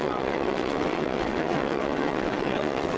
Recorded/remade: remade